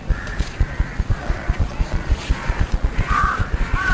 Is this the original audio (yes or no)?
no